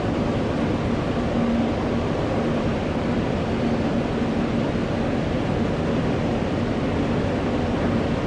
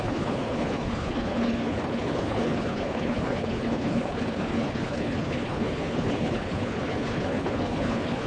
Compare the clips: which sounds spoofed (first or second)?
second